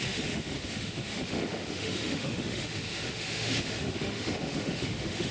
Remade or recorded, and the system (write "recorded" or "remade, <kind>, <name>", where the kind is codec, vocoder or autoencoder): remade, autoencoder, DAC-VAE